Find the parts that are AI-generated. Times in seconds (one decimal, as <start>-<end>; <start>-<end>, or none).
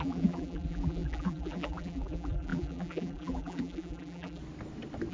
0.0-4.4